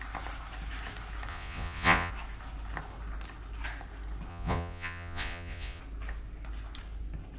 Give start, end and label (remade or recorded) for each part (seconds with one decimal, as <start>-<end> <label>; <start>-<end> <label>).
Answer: 0.0-1.3 recorded; 1.3-2.1 remade; 2.1-4.3 recorded; 4.3-5.8 remade; 5.8-7.4 recorded